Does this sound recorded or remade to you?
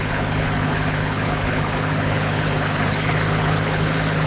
remade